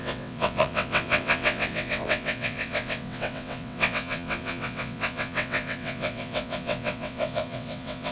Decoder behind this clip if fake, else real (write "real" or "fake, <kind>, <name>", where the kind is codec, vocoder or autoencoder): fake, vocoder, WaveNeXt